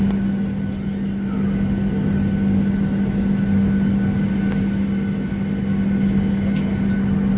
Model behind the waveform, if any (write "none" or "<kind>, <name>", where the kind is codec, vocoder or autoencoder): none